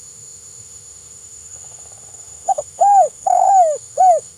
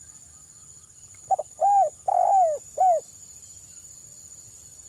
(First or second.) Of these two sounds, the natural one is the second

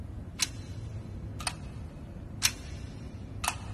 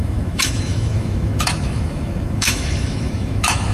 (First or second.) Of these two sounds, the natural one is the first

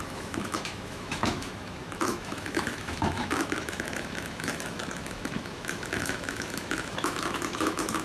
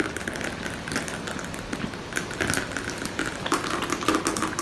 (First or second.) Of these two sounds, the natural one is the second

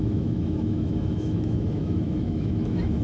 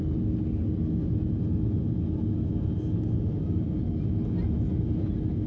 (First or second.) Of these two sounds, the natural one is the second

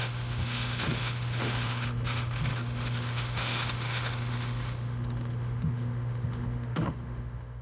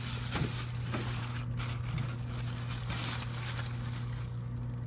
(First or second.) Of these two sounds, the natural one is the second